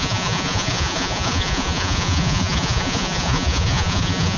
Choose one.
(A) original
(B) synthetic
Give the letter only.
B